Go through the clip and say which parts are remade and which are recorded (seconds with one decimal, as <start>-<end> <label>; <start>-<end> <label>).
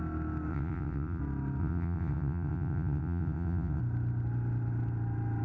0.0-0.5 recorded; 0.5-1.2 remade; 1.2-1.6 recorded; 1.6-3.8 remade; 3.8-5.4 recorded